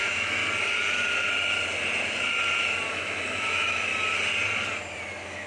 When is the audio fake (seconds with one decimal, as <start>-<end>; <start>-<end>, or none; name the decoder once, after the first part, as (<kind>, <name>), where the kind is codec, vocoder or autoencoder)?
0.0-0.4 (autoencoder, DAC-VAE); 2.9-3.9; 5.0-5.5